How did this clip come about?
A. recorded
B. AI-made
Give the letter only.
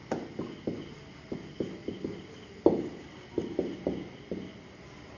A